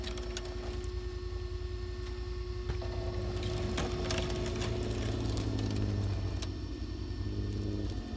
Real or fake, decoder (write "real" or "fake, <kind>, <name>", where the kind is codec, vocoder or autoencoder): real